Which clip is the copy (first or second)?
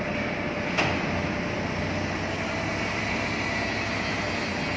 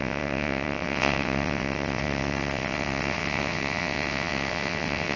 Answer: second